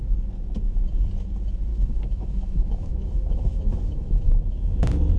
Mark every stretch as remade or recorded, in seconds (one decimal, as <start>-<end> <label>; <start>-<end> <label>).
0.0-1.7 recorded; 1.7-4.8 remade; 4.8-5.2 recorded